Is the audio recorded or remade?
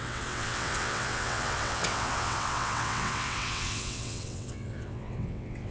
remade